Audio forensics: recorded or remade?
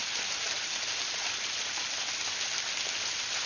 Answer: recorded